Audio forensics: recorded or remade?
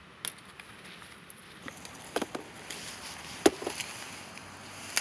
recorded